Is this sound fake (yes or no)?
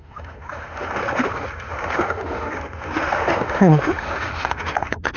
yes